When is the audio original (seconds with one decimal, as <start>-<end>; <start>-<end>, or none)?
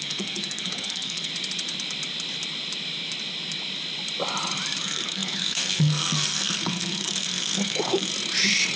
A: 1.3-4.8; 8.1-8.8